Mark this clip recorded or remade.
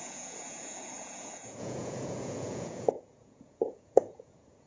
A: remade